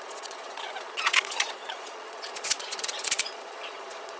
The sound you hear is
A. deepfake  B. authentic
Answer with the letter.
A